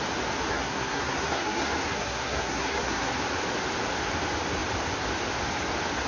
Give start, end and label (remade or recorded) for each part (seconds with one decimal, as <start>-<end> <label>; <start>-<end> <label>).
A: 0.0-0.5 recorded; 0.5-3.1 remade; 3.1-6.1 recorded